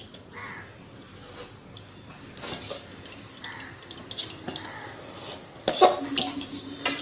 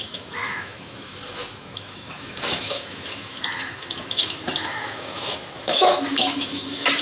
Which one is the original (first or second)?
first